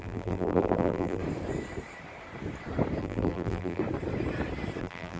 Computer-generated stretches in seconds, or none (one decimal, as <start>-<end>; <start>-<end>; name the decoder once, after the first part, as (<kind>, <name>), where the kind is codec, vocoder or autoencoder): 0.0-1.2 (vocoder, BigVGAN v2); 3.0-3.8; 4.8-5.2